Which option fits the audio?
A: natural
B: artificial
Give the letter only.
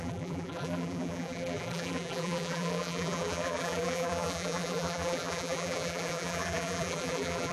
B